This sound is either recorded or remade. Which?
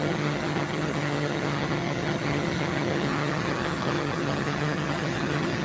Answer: remade